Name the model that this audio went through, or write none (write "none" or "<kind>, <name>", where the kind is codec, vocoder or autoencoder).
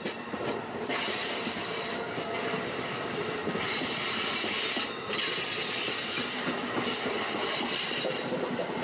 vocoder, BigVGAN v2